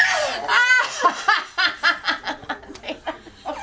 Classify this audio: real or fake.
real